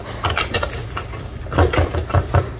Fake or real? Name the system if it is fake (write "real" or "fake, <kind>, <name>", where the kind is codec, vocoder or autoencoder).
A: real